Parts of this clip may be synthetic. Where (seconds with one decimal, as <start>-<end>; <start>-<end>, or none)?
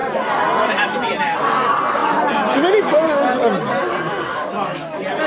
none